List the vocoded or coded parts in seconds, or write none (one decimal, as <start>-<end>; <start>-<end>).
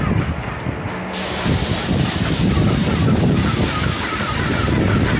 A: 1.6-4.5